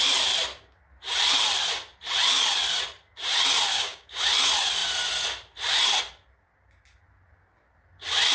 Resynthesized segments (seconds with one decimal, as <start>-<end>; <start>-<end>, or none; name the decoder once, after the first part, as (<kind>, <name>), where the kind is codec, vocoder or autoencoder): 3.7-4.2 (codec, DAC)